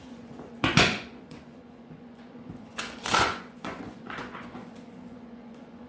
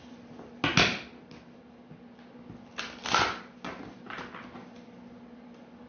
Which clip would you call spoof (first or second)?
first